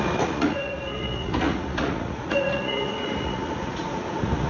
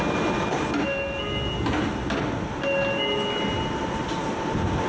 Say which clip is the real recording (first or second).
second